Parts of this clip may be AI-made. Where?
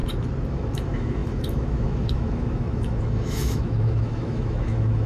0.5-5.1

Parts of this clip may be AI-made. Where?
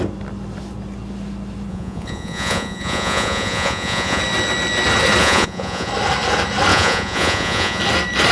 1.7-4.2; 5.2-5.9; 6.7-7.8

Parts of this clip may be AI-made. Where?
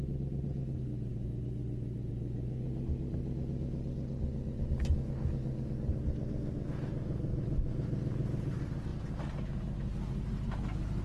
none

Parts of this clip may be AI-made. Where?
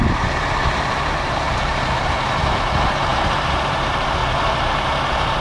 0.0-4.2; 4.7-5.4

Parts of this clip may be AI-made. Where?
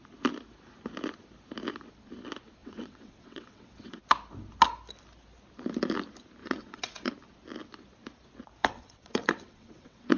2.6-4.0; 6.4-7.1; 8.6-10.2